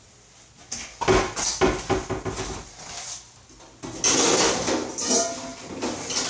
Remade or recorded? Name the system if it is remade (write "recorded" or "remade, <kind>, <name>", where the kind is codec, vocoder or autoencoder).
recorded